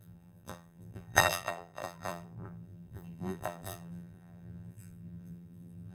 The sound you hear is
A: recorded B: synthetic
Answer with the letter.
B